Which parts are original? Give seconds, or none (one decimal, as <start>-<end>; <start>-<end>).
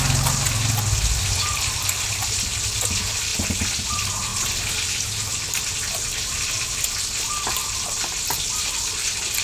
0.0-9.4